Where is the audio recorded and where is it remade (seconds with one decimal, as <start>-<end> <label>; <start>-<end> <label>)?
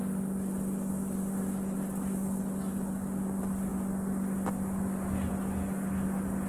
0.0-6.5 recorded